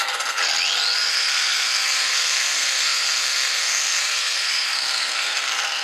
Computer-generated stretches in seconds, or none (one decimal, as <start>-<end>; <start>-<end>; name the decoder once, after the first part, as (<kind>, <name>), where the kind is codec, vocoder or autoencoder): 0.0-0.4 (codec, SNAC); 1.1-5.8

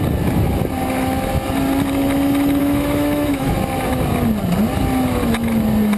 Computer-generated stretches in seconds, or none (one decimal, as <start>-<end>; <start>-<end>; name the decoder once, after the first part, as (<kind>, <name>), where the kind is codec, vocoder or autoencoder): 2.6-3.5 (autoencoder, DAC-VAE)

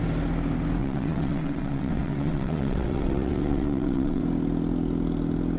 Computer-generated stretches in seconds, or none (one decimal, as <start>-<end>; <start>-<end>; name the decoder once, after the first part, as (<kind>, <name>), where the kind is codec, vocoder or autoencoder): 0.8-4.2 (vocoder, WaveNeXt)

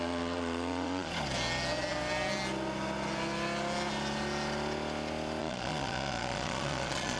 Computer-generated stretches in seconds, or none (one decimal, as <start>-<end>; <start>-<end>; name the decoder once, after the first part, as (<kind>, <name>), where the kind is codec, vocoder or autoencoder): 0.0-1.1 (vocoder, Vocos); 5.4-7.2

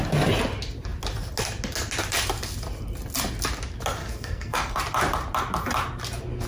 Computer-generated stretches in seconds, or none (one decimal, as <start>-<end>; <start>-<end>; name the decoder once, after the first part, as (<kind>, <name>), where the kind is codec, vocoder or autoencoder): 4.0-4.8 (codec, SNAC)

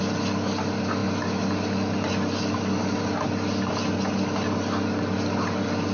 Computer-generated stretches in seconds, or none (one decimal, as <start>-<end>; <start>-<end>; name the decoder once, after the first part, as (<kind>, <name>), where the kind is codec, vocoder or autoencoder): none